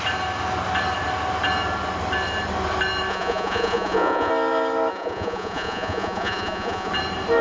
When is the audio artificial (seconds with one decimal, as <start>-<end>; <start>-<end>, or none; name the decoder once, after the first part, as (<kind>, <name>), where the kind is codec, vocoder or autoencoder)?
3.1-4.3 (vocoder, Vocos); 4.9-6.9